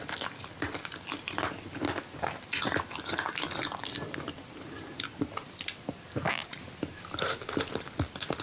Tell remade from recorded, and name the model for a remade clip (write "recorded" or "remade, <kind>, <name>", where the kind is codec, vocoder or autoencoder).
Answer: recorded